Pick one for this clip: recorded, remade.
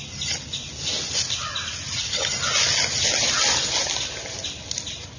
recorded